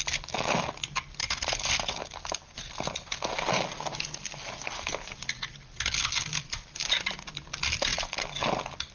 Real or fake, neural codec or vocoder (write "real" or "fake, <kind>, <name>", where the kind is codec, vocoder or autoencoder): real